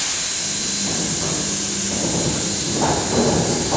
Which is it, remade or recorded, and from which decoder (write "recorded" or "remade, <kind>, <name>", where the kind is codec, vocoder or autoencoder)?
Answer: recorded